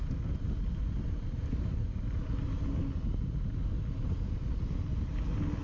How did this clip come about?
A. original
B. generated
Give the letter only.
A